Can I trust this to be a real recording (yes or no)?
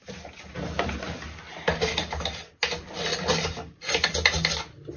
yes